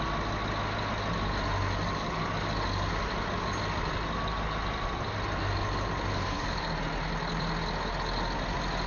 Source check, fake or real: real